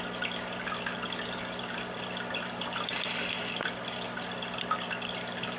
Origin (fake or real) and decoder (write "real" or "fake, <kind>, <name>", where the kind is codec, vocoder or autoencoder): real